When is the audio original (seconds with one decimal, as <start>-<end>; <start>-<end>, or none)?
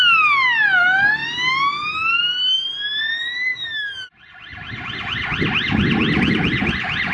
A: 0.0-7.1